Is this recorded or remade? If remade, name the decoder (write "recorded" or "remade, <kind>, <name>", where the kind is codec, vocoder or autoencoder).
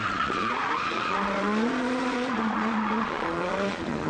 remade, vocoder, Vocos